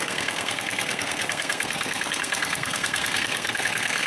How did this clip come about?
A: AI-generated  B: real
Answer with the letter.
A